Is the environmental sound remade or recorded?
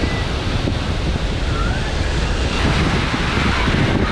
recorded